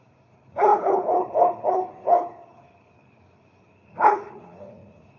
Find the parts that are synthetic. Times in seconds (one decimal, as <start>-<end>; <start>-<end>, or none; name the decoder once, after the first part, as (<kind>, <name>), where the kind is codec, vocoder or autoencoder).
0.0-5.2 (codec, HILCodec)